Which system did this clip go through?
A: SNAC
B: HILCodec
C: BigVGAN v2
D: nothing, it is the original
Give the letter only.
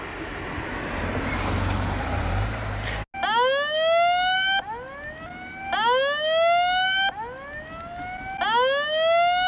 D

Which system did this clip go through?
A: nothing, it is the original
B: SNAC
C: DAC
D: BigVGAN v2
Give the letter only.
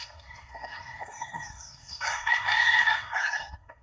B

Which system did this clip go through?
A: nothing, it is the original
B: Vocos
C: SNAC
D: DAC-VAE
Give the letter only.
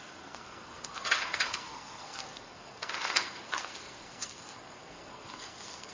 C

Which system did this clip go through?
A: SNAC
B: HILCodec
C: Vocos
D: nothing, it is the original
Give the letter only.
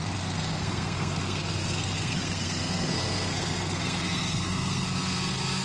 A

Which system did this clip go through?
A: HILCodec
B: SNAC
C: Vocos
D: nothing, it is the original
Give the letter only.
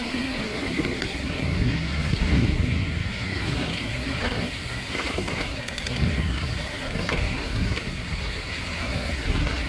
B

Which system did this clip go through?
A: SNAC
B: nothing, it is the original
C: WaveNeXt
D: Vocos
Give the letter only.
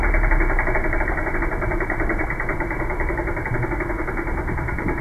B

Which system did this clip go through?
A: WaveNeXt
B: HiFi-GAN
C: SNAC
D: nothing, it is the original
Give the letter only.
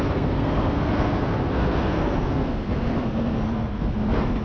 C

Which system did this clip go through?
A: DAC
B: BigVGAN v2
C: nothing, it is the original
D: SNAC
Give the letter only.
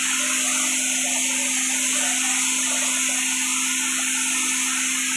C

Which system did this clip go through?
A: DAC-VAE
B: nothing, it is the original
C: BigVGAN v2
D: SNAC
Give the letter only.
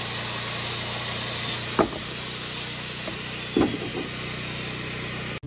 B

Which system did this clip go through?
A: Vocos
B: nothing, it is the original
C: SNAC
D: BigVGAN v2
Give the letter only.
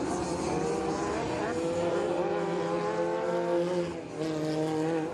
B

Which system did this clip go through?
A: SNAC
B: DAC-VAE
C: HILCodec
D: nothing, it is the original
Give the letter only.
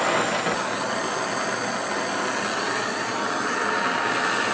D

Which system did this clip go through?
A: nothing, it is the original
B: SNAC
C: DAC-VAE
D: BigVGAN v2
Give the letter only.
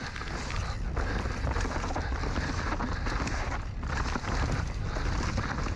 A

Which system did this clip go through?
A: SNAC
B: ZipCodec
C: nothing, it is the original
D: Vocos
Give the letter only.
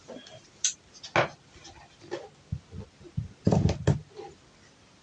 C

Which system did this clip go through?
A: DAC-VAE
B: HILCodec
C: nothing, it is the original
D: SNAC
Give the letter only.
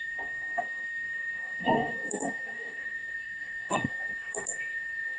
D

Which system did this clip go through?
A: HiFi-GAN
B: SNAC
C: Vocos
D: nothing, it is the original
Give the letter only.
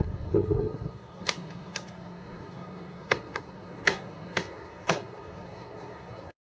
B